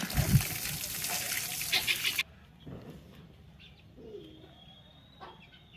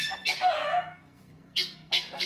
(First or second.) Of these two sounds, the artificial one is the second